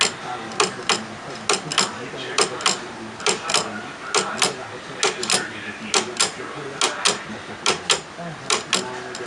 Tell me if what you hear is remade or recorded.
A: recorded